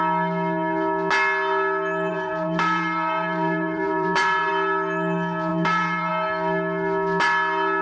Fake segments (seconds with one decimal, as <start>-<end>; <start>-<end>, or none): 2.1-4.5; 5.5-6.1